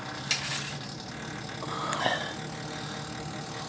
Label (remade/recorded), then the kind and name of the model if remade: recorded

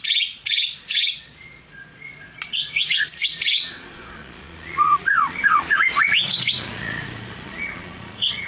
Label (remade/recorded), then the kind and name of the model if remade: remade, vocoder, Vocos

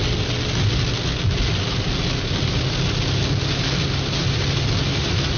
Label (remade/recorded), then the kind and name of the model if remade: recorded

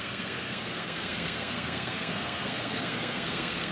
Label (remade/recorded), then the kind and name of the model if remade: remade, codec, SNAC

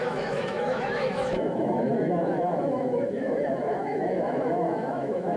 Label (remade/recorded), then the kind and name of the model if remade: remade, autoencoder, DAC-VAE